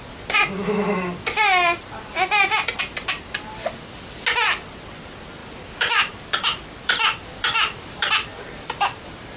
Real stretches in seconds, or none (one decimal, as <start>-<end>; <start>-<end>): 0.0-5.4; 8.1-9.4